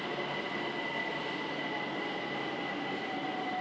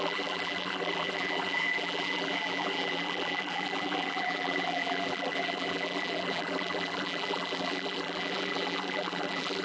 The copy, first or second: second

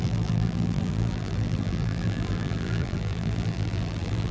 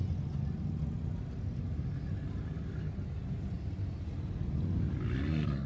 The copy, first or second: first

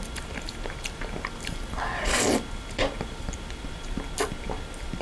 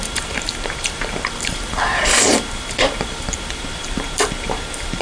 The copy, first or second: second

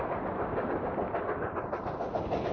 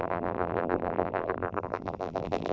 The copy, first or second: second